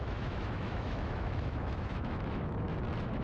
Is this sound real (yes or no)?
no